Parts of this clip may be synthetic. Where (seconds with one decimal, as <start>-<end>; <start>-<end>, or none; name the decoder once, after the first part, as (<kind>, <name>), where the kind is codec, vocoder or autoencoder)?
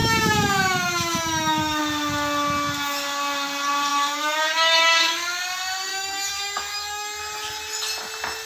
0.0-1.8 (autoencoder, DAC-VAE); 3.9-5.4; 5.9-7.2